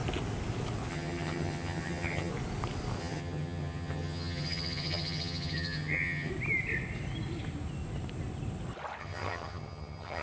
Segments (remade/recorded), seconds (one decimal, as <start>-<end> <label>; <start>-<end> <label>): 0.0-0.9 recorded; 0.9-2.3 remade; 2.3-3.0 recorded; 3.0-6.3 remade; 6.3-9.0 recorded; 9.0-10.2 remade